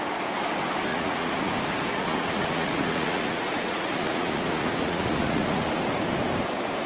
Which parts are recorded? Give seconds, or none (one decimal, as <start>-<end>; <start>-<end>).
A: 0.0-0.9; 1.5-1.9; 5.8-6.9